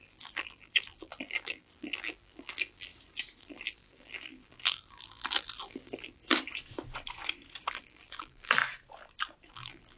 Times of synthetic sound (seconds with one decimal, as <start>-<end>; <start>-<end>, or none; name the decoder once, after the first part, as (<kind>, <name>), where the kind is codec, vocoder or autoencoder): 0.0-2.9 (vocoder, BigVGAN v2); 3.4-6.2; 7.7-8.6; 9.5-10.0